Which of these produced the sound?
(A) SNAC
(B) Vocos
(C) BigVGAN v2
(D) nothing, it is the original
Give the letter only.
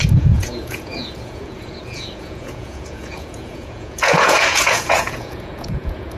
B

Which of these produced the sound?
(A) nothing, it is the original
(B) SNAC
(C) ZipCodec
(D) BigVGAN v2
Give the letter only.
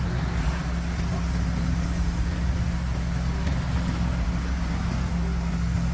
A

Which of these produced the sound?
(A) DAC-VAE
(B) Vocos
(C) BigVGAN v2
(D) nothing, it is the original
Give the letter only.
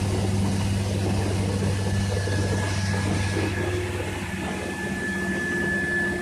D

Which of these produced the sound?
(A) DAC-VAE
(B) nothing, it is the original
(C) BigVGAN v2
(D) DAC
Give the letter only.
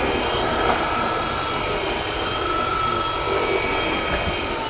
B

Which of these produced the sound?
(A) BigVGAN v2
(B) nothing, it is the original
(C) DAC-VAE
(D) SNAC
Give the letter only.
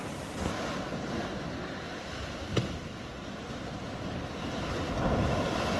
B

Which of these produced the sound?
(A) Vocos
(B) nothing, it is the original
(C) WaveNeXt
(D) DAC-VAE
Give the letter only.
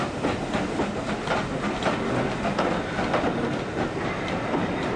B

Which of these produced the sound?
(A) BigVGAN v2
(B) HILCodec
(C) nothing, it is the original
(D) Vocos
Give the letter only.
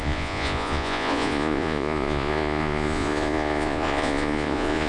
D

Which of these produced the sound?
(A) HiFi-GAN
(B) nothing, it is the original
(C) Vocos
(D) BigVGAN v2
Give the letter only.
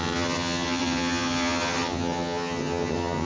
A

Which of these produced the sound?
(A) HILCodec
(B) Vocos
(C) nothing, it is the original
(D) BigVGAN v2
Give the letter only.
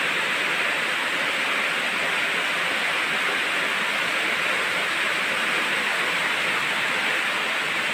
C